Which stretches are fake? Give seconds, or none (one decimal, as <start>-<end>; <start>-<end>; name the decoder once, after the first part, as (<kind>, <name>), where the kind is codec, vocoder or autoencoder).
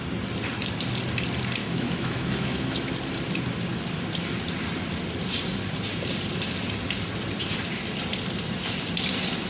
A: 1.6-2.9 (autoencoder, DAC-VAE)